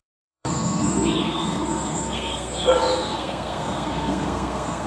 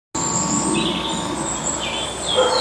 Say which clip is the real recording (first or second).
second